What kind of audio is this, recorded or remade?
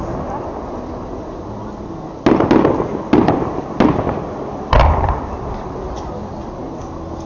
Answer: recorded